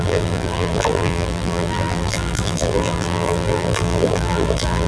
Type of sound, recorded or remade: remade